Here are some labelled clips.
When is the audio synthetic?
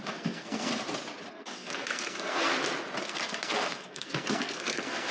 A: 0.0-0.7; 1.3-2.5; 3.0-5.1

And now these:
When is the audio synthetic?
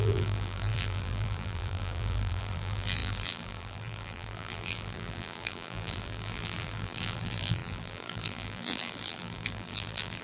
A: 0.0-10.2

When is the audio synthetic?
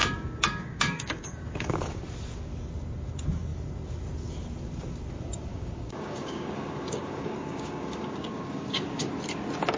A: 0.0-2.0; 5.5-9.1